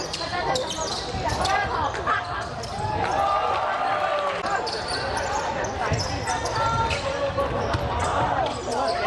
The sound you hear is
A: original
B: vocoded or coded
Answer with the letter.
A